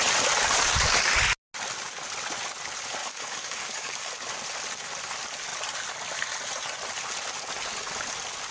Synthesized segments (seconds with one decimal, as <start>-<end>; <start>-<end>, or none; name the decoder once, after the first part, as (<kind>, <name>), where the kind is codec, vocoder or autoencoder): 3.0-4.1 (codec, DAC)